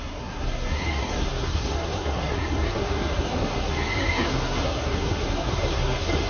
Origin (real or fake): fake